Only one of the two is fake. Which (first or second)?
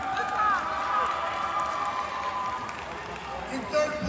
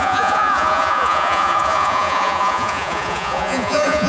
second